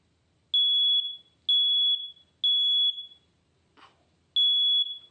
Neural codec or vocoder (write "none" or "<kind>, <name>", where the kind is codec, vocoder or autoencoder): none